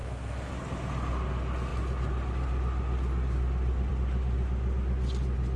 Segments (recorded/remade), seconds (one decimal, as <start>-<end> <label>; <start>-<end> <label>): 0.0-0.5 remade; 0.5-5.6 recorded